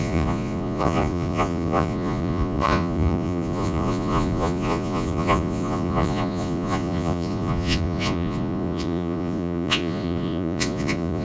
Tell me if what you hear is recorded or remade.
remade